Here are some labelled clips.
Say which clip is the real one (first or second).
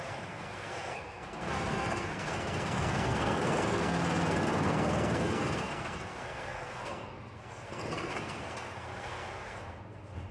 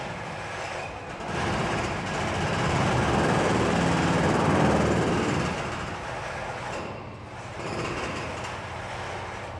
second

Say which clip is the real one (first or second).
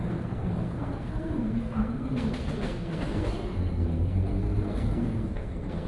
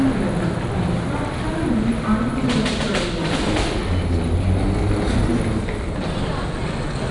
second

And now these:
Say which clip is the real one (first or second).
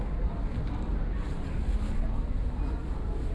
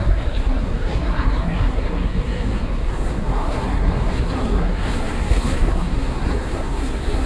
first